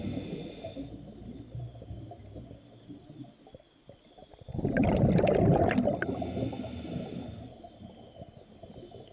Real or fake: real